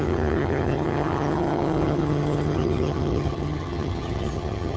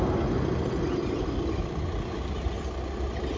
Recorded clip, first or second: second